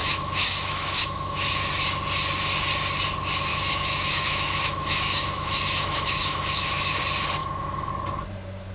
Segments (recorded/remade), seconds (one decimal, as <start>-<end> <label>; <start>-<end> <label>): 0.0-1.5 remade; 1.5-3.5 recorded; 3.5-7.0 remade; 7.0-7.4 recorded; 7.4-7.9 remade; 7.9-8.7 recorded